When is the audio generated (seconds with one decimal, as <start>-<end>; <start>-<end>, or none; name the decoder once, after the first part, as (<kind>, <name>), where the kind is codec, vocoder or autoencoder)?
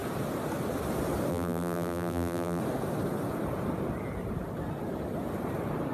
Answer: 1.3-2.6 (vocoder, BigVGAN v2)